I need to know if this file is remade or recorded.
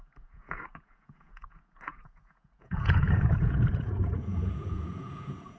remade